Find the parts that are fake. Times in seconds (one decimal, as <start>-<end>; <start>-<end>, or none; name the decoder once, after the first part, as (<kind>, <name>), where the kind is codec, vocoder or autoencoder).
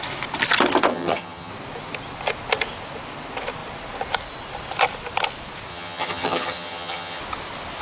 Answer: 0.9-1.5 (vocoder, HiFi-GAN); 5.7-7.2